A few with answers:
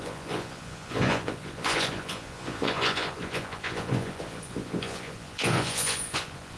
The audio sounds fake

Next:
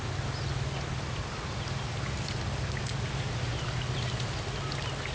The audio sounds real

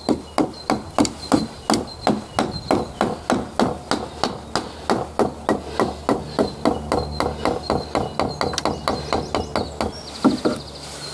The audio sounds real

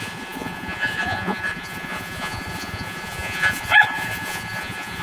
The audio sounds fake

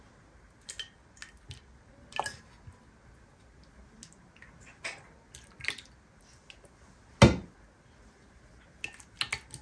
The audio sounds real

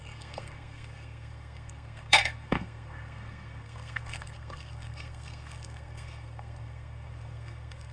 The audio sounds fake